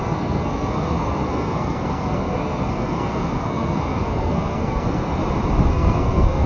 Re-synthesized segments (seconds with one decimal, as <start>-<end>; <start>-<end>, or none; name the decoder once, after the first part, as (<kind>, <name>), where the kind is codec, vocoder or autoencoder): 0.0-5.2 (codec, SNAC); 5.7-6.5